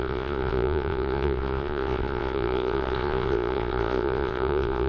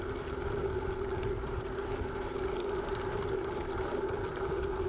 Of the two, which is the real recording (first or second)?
second